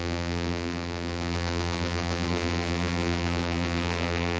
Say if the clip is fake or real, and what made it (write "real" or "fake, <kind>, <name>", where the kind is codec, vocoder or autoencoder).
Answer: fake, vocoder, BigVGAN v2